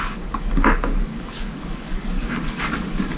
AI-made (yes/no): yes